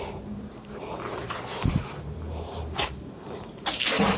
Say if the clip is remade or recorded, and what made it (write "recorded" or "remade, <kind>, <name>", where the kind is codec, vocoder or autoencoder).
remade, vocoder, BigVGAN v2